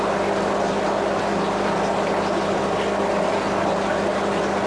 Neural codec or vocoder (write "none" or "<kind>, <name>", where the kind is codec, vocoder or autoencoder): none